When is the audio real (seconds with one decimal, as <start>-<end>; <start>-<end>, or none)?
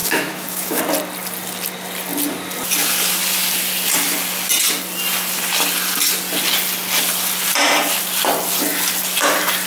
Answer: 0.8-9.7